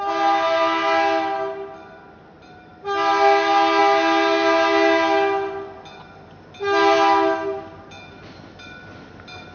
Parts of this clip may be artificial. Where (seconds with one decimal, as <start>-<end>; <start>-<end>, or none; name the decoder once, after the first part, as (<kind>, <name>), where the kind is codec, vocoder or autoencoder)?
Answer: none